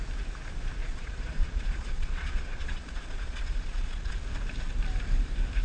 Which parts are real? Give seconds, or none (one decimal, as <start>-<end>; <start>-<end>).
0.0-0.8; 4.1-5.6